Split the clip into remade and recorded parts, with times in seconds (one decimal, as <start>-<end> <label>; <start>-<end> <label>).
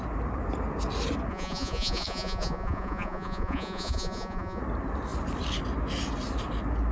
0.0-1.3 recorded; 1.3-4.6 remade; 4.6-6.9 recorded